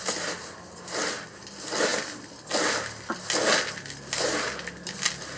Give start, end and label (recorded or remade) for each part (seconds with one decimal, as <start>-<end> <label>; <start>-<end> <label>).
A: 0.0-5.4 recorded

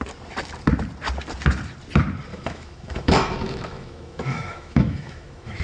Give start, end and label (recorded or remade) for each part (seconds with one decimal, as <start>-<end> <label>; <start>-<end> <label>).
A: 0.0-2.3 recorded; 2.3-5.6 remade